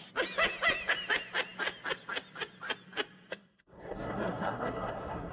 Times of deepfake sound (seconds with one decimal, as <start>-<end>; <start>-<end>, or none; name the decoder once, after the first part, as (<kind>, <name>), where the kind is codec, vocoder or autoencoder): 3.3-5.3 (codec, SNAC)